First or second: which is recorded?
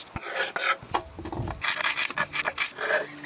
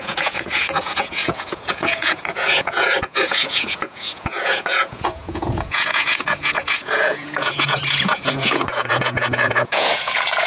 first